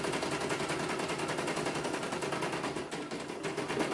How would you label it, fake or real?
real